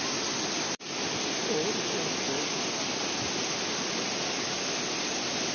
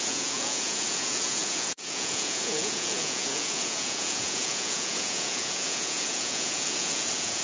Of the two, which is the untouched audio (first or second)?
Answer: first